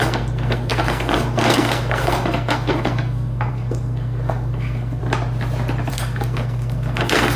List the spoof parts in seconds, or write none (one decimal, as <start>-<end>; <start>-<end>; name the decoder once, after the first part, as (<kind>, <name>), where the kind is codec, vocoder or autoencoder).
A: 0.0-5.0 (codec, SNAC); 5.9-7.4